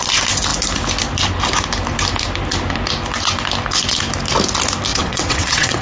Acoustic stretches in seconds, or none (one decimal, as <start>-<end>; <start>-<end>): 0.0-4.9